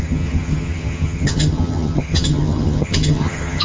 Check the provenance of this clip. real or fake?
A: fake